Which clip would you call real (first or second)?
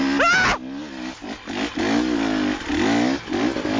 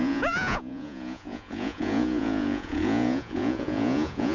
first